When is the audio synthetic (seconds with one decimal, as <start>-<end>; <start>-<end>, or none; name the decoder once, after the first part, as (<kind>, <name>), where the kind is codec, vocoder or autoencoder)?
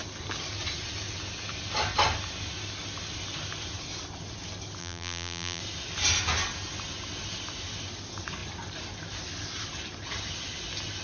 4.8-5.6 (vocoder, BigVGAN v2)